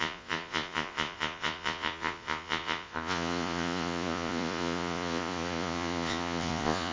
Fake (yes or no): yes